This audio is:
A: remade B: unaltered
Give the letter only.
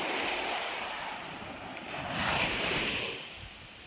A